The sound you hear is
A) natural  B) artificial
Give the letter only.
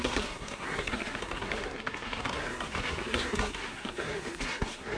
B